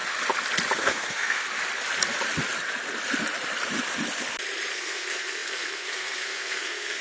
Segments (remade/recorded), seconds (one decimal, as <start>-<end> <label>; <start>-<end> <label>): 0.0-0.8 recorded; 0.8-1.4 remade; 1.4-4.7 recorded; 4.7-7.0 remade